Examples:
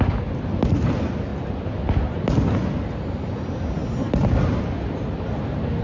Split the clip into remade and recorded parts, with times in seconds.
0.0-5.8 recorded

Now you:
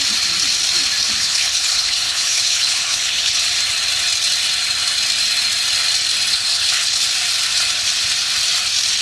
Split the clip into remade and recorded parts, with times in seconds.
0.0-1.2 recorded; 1.2-3.4 remade; 3.4-6.3 recorded; 6.3-7.0 remade; 7.0-9.0 recorded

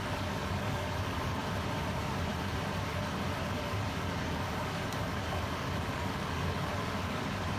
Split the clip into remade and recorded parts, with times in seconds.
0.0-1.4 remade; 1.4-1.9 recorded; 1.9-2.3 remade; 2.3-3.4 recorded; 3.4-7.6 remade

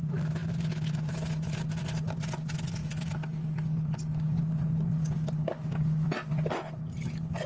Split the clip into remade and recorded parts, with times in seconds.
0.0-2.8 recorded; 2.8-4.4 remade; 4.4-7.5 recorded

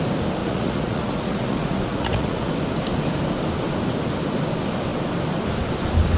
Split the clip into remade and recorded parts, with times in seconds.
0.0-0.4 recorded; 0.4-2.5 remade; 2.5-6.2 recorded

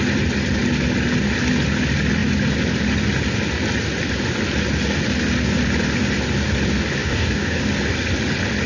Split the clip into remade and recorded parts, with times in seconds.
0.0-7.0 recorded; 7.0-7.6 remade; 7.6-8.7 recorded